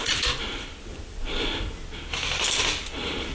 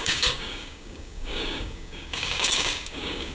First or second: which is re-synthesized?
second